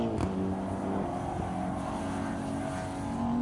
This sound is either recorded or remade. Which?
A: recorded